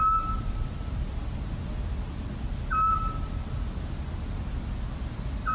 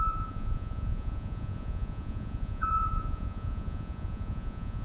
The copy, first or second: second